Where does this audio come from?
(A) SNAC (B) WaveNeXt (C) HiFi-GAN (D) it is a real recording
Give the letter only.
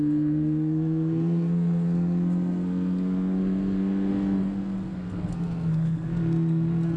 A